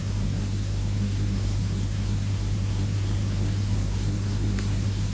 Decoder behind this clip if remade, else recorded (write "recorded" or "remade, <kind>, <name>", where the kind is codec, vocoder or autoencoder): remade, codec, SNAC